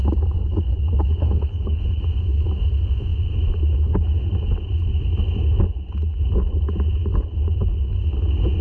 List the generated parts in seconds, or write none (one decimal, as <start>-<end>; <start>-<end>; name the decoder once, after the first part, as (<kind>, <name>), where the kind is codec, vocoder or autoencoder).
0.4-2.0 (codec, HILCodec)